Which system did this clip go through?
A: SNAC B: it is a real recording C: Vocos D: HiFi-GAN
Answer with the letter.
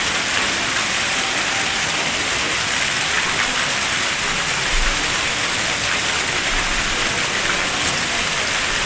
B